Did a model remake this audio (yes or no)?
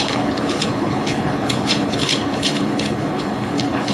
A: yes